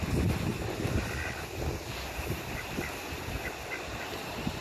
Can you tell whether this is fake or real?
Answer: real